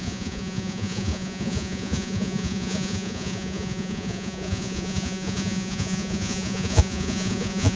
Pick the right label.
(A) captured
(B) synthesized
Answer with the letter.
B